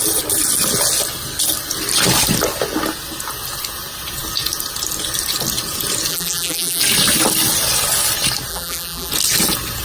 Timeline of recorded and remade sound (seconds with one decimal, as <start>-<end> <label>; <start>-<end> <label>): 0.0-6.1 recorded; 6.1-6.8 remade; 6.8-8.5 recorded; 8.5-9.1 remade; 9.1-9.8 recorded